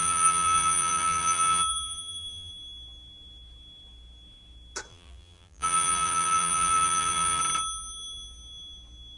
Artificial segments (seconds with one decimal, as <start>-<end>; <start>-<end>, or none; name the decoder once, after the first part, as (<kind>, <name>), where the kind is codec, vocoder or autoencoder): 0.0-2.5 (vocoder, BigVGAN v2); 4.9-7.4